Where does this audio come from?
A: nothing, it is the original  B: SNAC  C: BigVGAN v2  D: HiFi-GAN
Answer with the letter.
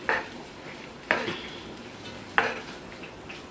A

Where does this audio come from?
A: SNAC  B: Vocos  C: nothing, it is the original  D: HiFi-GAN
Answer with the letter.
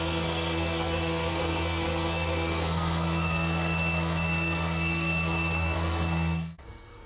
A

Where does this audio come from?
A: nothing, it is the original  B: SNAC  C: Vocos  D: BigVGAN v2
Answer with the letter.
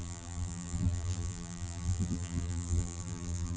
D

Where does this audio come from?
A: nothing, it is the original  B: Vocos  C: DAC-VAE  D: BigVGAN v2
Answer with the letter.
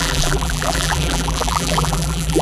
D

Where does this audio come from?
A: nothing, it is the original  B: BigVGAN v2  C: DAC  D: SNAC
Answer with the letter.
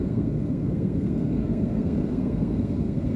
D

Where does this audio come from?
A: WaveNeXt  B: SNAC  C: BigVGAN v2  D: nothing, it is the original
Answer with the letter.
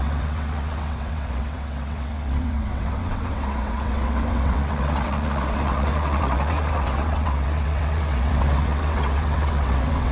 A